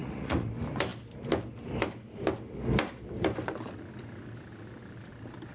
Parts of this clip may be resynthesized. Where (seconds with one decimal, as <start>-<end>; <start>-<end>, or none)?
0.0-0.5